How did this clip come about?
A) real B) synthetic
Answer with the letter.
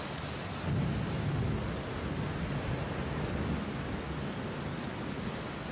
A